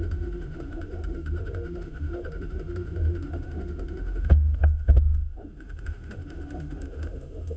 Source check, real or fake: fake